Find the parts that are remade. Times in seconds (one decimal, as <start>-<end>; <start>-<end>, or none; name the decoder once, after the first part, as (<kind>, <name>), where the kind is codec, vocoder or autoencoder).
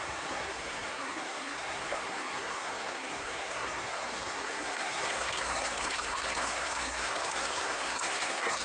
0.0-8.6 (codec, SNAC)